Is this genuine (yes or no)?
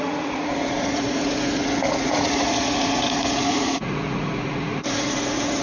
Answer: no